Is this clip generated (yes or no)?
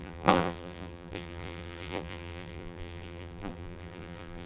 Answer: yes